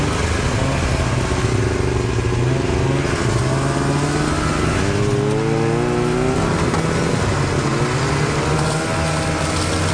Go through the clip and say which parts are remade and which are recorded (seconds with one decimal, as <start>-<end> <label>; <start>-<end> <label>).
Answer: 0.0-9.9 recorded